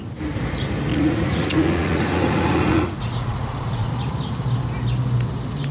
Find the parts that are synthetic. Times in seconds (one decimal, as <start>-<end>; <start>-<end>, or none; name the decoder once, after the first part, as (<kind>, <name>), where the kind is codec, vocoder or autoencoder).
0.9-3.9 (vocoder, Vocos)